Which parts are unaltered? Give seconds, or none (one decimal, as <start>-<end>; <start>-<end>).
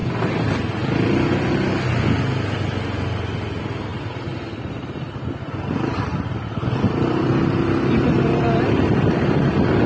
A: 0.0-3.9; 9.1-9.9